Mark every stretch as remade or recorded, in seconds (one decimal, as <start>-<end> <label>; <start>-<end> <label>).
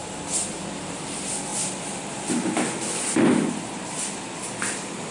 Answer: 0.0-1.5 recorded; 1.5-2.6 remade; 2.6-5.1 recorded